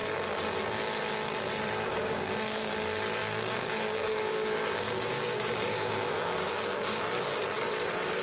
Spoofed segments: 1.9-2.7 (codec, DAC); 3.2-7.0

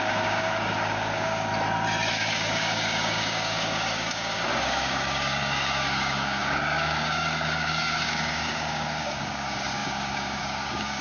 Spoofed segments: 0.0-1.5 (codec, DAC); 2.1-11.0

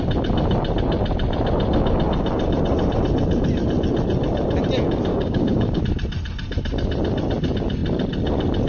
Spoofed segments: 5.1-5.8 (codec, DAC)

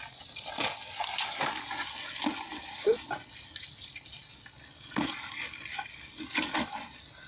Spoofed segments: none

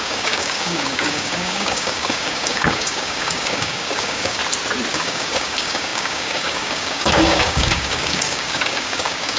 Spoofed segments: 0.0-4.4 (codec, DAC); 4.9-9.4